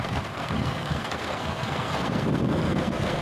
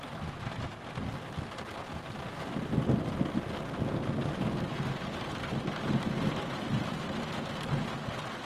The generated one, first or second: first